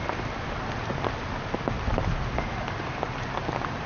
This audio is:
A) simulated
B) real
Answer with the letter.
B